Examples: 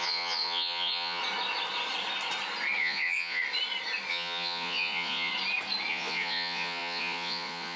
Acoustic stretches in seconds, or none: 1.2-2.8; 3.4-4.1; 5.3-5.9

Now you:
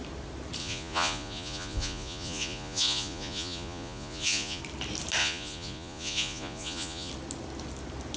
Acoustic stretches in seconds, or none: 0.0-0.6; 4.6-5.2; 7.1-8.2

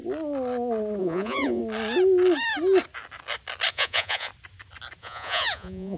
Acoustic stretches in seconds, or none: 0.0-1.0; 1.6-3.7; 4.3-5.0

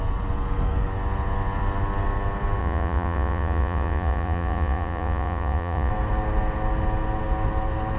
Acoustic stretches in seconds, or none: 0.0-2.6; 5.9-8.0

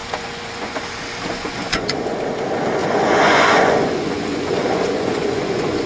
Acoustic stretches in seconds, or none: 0.7-1.3; 2.2-2.8

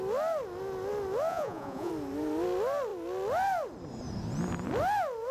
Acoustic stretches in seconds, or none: 0.0-1.3; 1.9-5.3

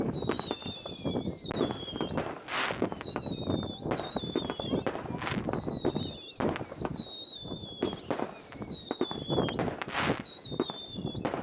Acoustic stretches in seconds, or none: 0.0-11.4

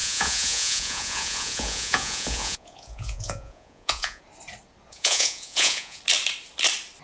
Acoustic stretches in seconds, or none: 4.2-4.9; 6.0-7.0